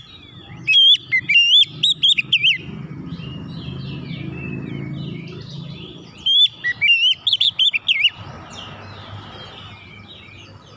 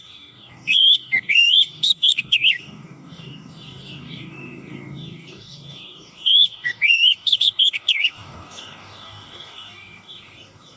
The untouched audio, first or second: first